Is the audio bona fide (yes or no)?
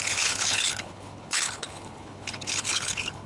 no